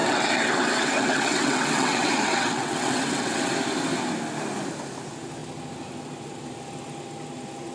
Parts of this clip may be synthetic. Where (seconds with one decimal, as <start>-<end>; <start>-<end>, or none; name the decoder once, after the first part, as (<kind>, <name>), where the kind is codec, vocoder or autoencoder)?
0.0-3.5 (vocoder, WaveNeXt)